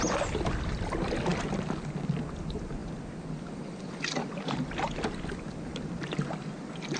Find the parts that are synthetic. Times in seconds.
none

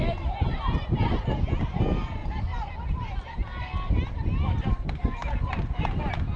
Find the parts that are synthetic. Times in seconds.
none

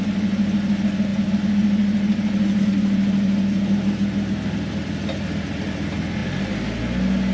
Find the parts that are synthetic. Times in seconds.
none

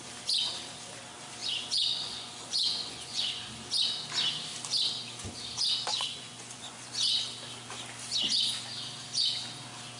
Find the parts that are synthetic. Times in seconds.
1.4-3.5 (vocoder, Vocos); 5.9-6.9